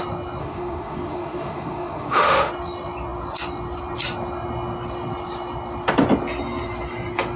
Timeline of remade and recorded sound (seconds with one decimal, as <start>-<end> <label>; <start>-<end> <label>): 0.0-0.4 recorded; 0.4-2.5 remade; 2.5-7.4 recorded